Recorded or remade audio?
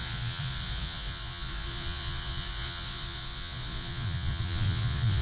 remade